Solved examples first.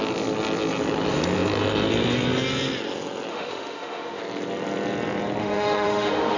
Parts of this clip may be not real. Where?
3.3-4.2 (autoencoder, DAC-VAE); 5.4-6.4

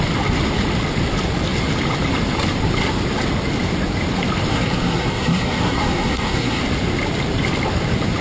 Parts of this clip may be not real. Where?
4.5-6.6 (codec, SNAC)

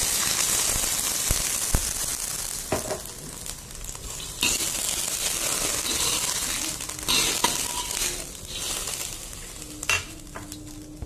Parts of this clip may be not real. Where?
none